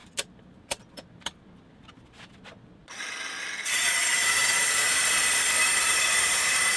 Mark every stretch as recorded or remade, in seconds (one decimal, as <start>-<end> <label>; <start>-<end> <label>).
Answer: 0.0-6.8 recorded